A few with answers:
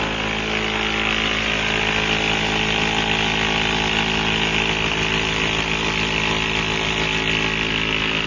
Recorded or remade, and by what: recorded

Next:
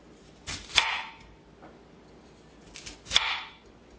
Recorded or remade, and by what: recorded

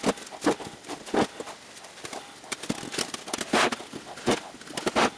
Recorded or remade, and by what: recorded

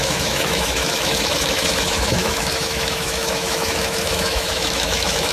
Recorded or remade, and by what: remade, autoencoder, DAC-VAE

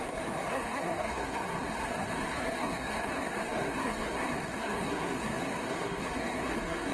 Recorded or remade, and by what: remade, codec, SNAC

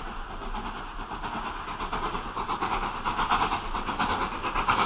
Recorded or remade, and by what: recorded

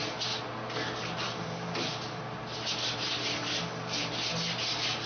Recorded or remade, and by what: recorded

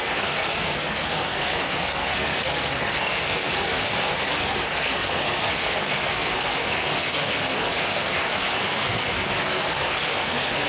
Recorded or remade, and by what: remade, codec, SNAC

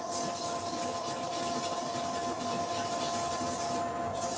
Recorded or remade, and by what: recorded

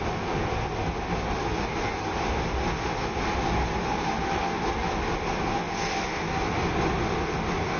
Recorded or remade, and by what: recorded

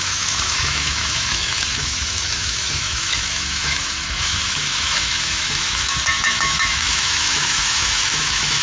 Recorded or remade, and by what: remade, autoencoder, DAC-VAE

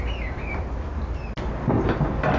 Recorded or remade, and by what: recorded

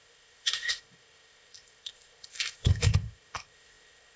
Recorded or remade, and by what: remade, codec, ZipCodec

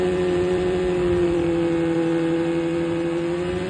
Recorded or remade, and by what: remade, vocoder, BigVGAN v2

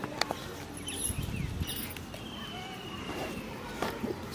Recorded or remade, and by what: recorded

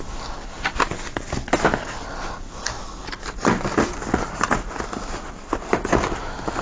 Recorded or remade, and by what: recorded